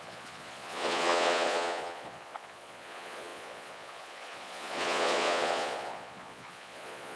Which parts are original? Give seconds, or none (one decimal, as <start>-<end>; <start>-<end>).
none